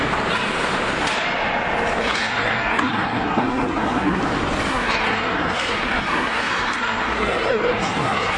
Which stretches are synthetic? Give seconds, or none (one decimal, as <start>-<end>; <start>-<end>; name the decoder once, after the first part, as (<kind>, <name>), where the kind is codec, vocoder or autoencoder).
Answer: 2.0-4.2 (codec, SNAC); 4.7-8.4